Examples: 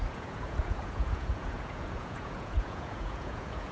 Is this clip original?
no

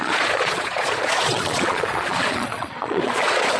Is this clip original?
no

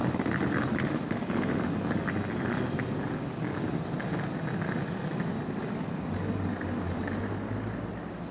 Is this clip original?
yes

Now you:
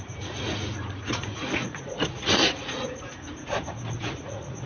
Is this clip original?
no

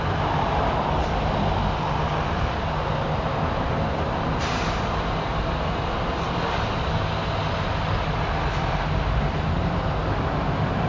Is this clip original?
yes